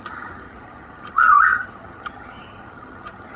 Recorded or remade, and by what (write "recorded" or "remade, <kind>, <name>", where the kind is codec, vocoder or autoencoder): remade, vocoder, HiFi-GAN